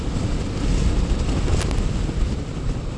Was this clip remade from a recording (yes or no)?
no